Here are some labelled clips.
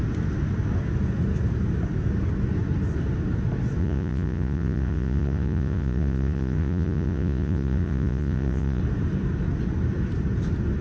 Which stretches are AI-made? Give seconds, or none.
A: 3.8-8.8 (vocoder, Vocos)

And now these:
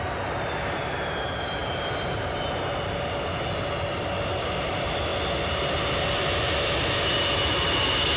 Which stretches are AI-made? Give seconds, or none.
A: none